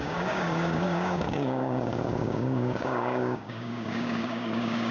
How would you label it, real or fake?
fake